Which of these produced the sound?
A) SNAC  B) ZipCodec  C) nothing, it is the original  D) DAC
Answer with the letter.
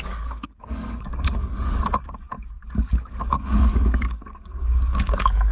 D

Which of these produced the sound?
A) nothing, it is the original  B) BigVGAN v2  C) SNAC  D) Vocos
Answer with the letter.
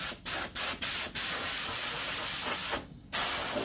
A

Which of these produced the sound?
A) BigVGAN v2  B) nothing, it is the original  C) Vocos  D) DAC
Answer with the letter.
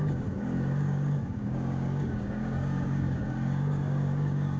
D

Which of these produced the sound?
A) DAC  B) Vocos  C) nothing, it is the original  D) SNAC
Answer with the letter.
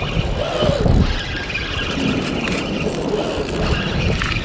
C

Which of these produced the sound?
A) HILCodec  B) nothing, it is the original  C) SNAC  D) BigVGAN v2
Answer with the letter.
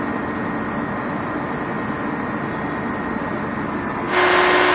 B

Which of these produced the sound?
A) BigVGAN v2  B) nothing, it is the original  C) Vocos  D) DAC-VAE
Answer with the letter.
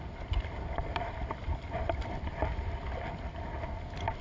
B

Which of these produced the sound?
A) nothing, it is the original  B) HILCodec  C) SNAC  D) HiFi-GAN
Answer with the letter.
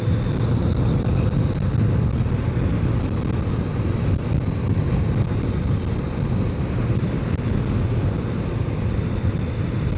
A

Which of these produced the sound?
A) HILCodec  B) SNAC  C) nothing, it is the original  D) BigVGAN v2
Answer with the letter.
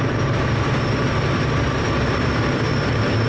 D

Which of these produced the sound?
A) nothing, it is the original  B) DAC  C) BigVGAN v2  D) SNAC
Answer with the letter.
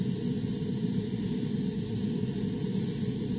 A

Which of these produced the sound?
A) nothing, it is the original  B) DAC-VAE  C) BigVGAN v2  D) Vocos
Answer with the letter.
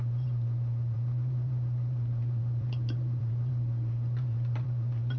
C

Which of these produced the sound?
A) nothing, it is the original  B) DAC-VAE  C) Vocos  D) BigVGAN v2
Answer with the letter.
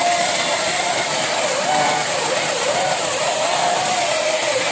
D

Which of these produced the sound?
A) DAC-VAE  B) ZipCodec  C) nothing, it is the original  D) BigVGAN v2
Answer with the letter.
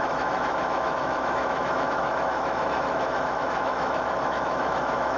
A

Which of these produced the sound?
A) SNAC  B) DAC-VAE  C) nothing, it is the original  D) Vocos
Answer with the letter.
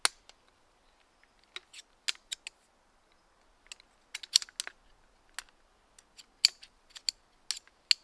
C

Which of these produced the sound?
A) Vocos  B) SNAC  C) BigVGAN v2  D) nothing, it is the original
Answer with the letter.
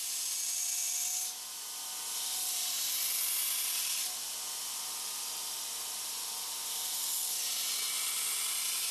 D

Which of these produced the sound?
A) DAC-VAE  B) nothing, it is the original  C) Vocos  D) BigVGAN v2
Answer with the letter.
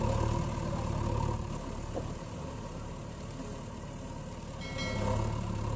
B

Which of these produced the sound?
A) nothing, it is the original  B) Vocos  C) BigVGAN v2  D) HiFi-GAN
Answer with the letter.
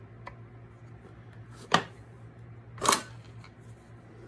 A